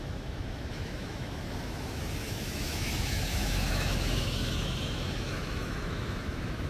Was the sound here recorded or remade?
remade